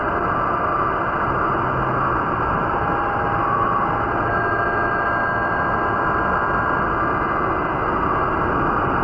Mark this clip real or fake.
real